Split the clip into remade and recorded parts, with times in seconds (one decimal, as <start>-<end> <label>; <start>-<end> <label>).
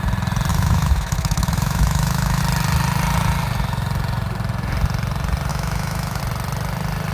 0.0-0.5 recorded; 0.5-2.4 remade; 2.4-5.5 recorded; 5.5-6.2 remade; 6.2-7.1 recorded